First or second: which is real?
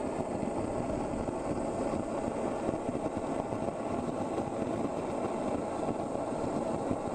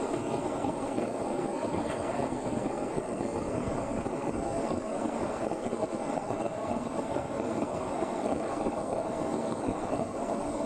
first